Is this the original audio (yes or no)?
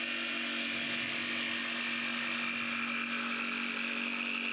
yes